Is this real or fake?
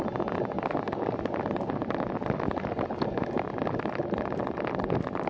real